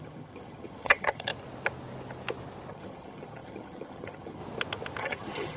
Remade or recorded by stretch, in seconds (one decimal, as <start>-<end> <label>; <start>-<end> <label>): 0.0-1.3 remade; 1.3-2.7 recorded; 2.7-4.4 remade; 4.4-5.0 recorded; 5.0-5.6 remade